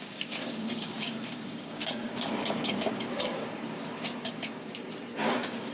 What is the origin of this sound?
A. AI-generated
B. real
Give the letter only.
A